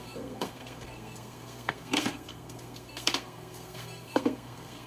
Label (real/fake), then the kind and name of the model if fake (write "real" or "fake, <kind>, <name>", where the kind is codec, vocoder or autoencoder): fake, codec, SNAC